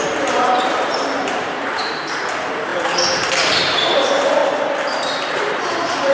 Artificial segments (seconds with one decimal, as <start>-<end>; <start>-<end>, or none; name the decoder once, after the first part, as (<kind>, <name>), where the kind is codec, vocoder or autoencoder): 0.0-4.4 (vocoder, BigVGAN v2); 5.3-6.1